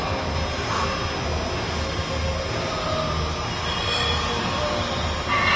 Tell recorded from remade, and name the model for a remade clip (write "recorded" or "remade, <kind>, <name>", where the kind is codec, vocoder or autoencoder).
recorded